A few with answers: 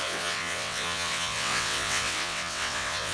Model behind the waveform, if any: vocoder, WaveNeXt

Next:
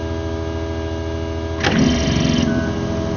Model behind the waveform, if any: none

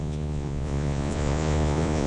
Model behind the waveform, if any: vocoder, Vocos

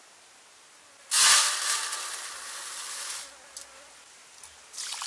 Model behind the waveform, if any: none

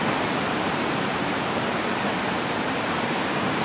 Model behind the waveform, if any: vocoder, BigVGAN v2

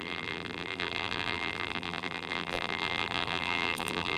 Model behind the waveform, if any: vocoder, BigVGAN v2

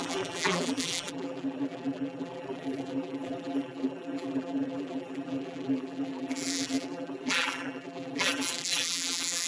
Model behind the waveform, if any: vocoder, BigVGAN v2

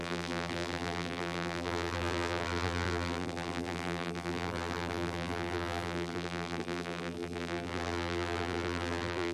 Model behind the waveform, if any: vocoder, BigVGAN v2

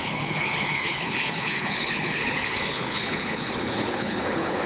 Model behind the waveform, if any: codec, HILCodec